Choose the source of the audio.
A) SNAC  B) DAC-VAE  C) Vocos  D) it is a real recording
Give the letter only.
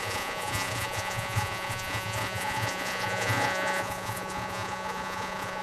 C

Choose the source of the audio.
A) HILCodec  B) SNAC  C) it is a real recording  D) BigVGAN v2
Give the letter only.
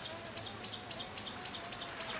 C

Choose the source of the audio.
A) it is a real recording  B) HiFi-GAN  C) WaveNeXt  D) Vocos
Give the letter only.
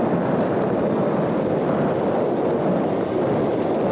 A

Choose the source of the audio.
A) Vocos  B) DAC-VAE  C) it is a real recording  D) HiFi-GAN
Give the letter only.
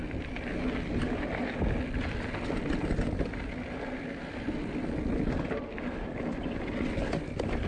C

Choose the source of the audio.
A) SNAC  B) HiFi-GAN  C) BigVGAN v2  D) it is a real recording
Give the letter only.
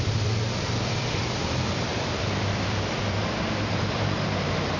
C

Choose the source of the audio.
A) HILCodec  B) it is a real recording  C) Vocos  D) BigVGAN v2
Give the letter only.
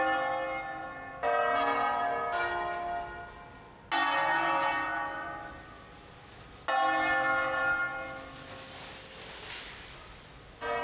B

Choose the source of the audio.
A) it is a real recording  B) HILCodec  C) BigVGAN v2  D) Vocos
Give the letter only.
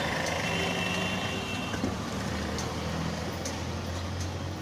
A